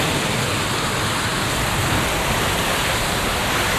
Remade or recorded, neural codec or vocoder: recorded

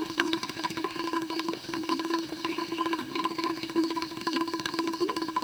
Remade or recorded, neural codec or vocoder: remade, autoencoder, DAC-VAE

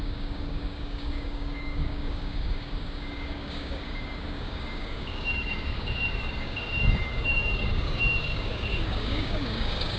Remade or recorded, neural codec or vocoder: remade, codec, DAC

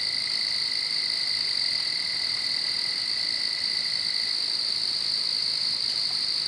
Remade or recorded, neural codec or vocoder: recorded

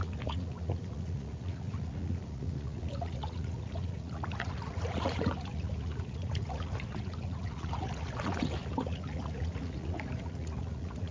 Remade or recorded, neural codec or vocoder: remade, vocoder, Vocos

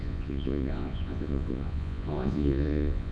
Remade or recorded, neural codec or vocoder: remade, vocoder, Vocos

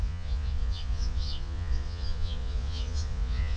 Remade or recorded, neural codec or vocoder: remade, vocoder, Vocos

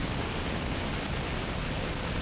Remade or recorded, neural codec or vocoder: recorded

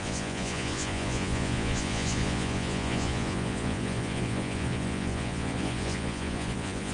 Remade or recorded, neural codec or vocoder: remade, vocoder, Vocos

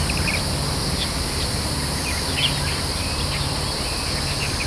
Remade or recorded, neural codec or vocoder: recorded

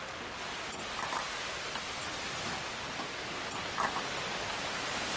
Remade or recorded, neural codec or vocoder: recorded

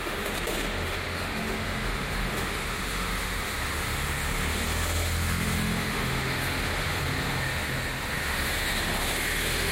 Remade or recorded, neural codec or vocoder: remade, autoencoder, DAC-VAE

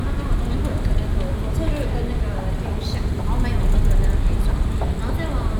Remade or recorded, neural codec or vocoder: recorded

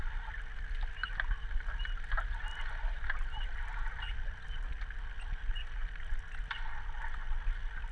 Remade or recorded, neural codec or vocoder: recorded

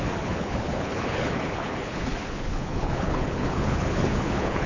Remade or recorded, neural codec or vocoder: remade, codec, HILCodec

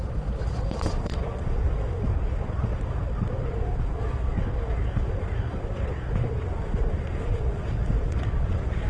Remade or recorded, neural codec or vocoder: remade, vocoder, Vocos